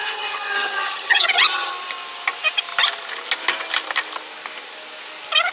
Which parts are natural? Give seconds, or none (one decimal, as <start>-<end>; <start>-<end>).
1.7-5.5